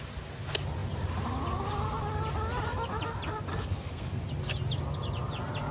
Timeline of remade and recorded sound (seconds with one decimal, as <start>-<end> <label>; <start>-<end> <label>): 0.0-3.5 recorded; 3.5-4.2 remade; 4.2-5.7 recorded